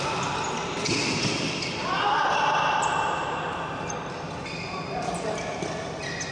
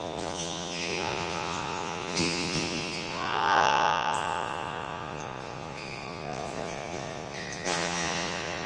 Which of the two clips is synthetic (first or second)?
second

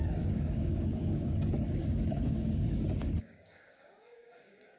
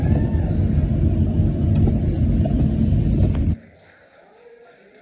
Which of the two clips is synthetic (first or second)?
first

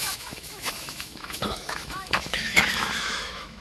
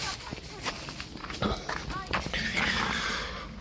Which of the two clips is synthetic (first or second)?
first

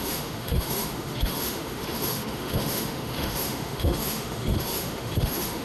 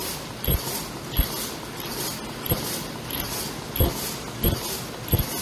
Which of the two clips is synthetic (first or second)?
first